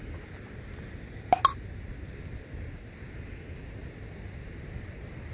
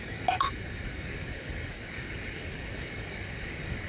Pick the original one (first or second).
first